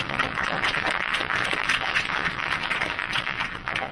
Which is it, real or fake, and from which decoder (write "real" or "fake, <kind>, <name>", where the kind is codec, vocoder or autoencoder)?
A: fake, vocoder, WaveNeXt